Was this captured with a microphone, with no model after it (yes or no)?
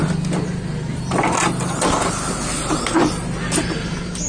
yes